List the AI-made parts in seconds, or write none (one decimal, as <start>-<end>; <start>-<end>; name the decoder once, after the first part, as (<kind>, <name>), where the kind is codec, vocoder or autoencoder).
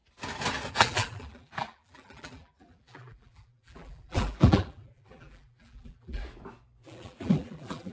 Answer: 0.7-6.2 (vocoder, BigVGAN v2); 6.8-7.9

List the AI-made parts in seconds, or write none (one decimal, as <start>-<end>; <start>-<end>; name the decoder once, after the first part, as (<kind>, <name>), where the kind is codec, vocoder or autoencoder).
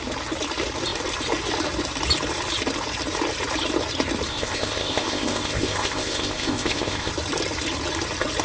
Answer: 4.3-7.1 (codec, ZipCodec)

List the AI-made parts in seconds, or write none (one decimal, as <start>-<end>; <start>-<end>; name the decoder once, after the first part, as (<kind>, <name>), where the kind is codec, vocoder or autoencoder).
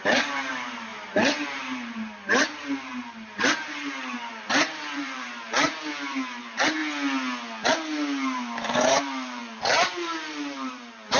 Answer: 0.0-6.8 (vocoder, BigVGAN v2); 7.7-11.2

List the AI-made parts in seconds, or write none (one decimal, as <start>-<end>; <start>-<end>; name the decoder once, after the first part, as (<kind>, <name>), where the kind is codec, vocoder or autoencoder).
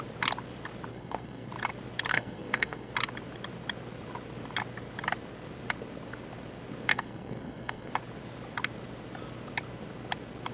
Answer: 0.9-1.5 (codec, SNAC); 2.1-2.9; 6.9-7.9